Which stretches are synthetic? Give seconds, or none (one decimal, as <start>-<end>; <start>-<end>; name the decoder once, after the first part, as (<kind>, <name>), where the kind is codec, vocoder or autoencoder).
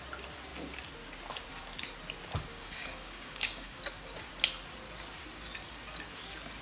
2.5-3.8 (codec, DAC)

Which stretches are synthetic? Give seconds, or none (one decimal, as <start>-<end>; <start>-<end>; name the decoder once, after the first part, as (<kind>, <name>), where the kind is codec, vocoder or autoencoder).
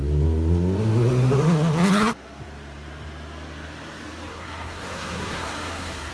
4.3-6.1 (codec, SNAC)